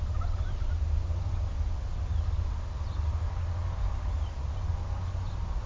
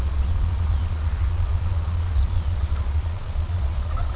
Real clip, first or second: first